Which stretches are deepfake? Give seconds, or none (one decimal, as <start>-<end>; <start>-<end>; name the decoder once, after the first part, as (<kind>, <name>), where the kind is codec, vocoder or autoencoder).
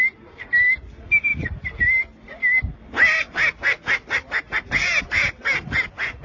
none